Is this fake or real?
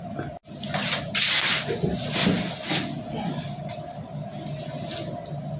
real